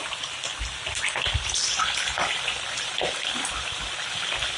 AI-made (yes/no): no